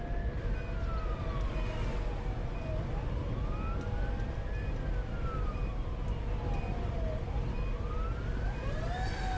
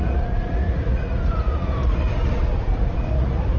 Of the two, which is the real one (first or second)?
first